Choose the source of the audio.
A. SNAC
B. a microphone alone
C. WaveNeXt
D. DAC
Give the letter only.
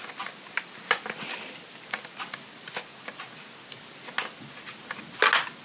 B